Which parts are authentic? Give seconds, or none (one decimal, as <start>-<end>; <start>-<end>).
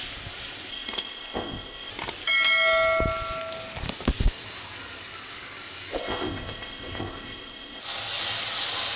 0.0-0.7; 1.9-6.0; 7.8-9.0